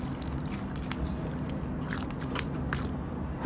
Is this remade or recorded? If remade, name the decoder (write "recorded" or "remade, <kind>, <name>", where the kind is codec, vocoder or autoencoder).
recorded